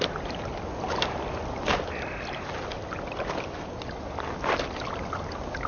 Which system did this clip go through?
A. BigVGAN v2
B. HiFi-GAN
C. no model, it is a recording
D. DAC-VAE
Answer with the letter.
C